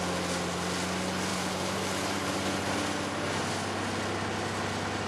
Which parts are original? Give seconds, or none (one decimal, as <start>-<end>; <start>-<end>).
0.0-1.3; 2.6-5.1